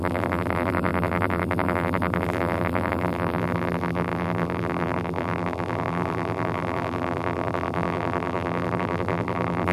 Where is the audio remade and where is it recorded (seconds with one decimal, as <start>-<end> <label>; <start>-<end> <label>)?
0.0-9.7 remade